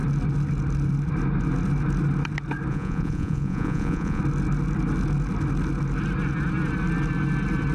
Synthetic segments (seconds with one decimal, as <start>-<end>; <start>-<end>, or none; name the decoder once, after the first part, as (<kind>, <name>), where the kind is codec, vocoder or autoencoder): 2.7-4.2 (vocoder, Vocos)